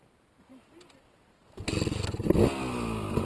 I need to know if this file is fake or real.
real